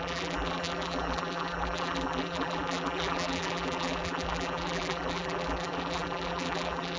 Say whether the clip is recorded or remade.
remade